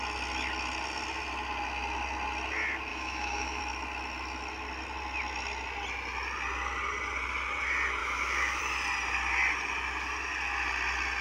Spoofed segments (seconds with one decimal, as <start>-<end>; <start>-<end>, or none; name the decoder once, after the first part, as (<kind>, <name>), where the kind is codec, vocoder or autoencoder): 2.9-3.6 (autoencoder, DAC-VAE); 8.0-8.6

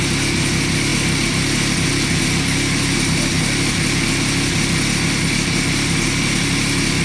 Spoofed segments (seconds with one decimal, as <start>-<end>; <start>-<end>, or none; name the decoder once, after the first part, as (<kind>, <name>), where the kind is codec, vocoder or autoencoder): none

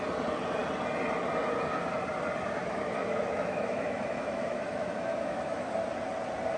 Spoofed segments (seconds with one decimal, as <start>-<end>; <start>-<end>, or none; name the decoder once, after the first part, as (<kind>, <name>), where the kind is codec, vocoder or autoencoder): 2.6-5.7 (autoencoder, DAC-VAE)

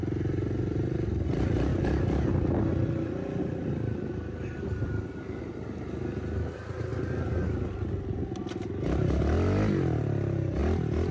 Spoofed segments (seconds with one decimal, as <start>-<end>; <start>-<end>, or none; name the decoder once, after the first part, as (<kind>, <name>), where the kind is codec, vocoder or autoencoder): none

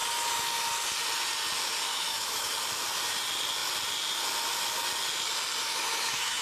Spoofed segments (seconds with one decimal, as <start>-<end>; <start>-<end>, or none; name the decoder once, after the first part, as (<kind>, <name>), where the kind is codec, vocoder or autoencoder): 1.9-2.5 (autoencoder, DAC-VAE); 5.6-6.4

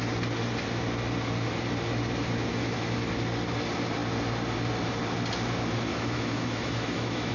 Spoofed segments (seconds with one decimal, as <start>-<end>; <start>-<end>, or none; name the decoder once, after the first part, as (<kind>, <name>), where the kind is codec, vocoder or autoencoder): 2.5-3.1 (autoencoder, DAC-VAE); 5.9-7.3

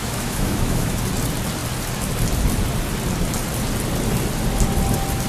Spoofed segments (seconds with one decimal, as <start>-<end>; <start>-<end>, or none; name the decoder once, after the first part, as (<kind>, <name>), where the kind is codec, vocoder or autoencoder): 0.0-1.0 (autoencoder, DAC-VAE)